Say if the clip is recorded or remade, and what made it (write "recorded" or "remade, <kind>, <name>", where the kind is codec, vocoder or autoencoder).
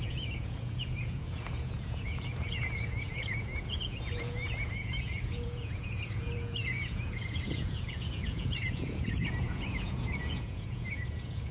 remade, vocoder, Vocos